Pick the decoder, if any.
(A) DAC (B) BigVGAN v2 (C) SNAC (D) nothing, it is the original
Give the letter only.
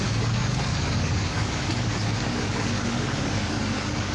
A